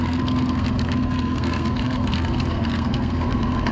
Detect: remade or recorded remade